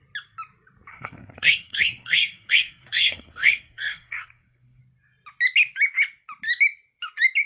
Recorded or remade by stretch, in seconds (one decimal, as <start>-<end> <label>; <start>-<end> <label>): 0.0-0.9 recorded; 0.9-4.8 remade; 4.8-7.5 recorded